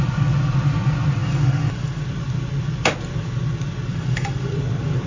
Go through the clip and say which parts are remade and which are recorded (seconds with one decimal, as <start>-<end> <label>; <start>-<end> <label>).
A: 0.0-1.2 recorded; 1.2-2.0 remade; 2.0-3.9 recorded; 3.9-4.5 remade; 4.5-5.1 recorded